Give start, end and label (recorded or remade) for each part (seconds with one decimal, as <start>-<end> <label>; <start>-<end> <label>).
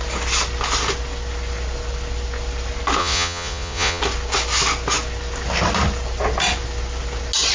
0.0-3.0 recorded; 3.0-4.0 remade; 4.0-7.5 recorded